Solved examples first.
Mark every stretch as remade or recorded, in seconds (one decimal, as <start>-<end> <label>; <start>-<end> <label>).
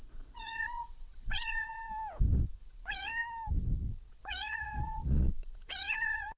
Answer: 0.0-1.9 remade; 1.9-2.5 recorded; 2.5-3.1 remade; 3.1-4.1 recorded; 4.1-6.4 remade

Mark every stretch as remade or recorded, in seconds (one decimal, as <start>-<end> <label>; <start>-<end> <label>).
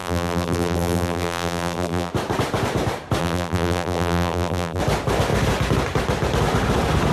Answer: 0.0-2.1 remade; 2.1-3.2 recorded; 3.2-4.8 remade; 4.8-7.1 recorded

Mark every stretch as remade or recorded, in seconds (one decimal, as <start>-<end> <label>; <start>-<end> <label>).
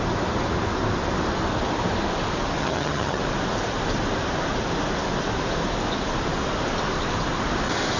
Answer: 0.0-2.6 recorded; 2.6-3.2 remade; 3.2-8.0 recorded